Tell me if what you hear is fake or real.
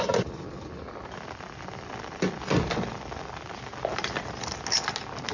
real